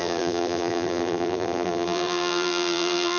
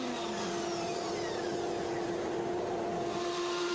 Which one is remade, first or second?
first